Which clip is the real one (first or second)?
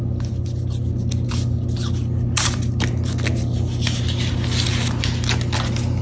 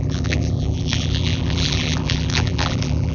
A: first